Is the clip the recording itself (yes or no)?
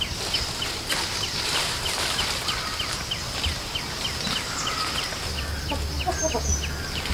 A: yes